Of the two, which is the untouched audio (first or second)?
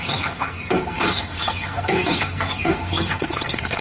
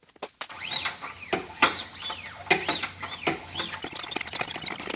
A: second